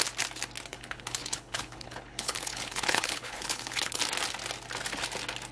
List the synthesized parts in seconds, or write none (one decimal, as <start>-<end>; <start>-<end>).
0.7-4.0